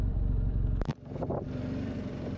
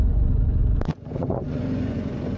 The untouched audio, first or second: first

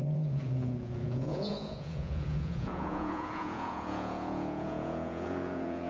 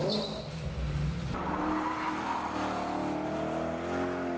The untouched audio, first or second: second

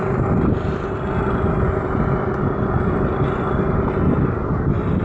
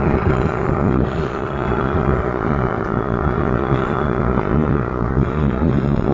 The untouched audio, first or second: first